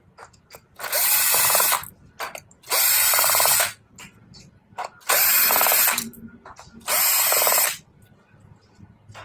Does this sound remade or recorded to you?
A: recorded